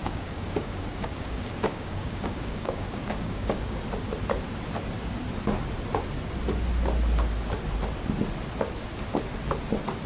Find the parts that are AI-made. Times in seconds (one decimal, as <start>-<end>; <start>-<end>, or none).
0.0-3.8